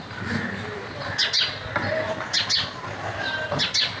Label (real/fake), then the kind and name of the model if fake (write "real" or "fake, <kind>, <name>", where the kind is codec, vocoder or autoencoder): real